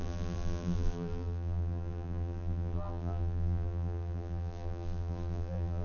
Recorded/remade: remade